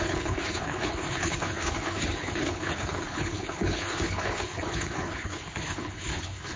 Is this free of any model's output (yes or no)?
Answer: no